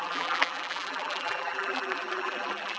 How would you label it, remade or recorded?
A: remade